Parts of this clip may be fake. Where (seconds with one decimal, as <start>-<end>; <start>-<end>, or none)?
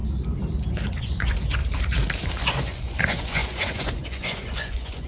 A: 1.0-1.6; 2.4-5.1